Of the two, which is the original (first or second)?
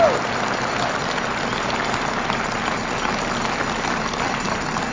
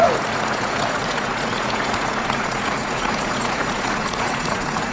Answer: first